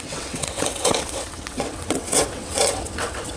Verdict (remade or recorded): remade